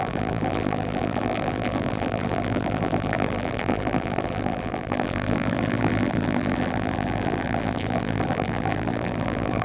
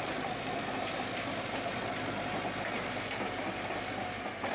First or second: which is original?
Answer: second